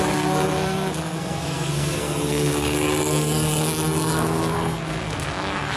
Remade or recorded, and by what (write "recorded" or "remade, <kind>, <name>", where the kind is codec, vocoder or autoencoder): remade, codec, SNAC